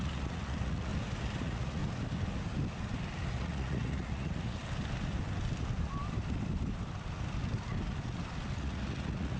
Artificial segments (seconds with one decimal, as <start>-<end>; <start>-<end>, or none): 0.0-0.9; 1.4-1.8; 3.3-4.6; 8.5-9.4